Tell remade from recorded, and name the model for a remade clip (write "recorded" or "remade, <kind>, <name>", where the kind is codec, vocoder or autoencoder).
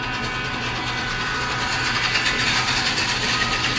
recorded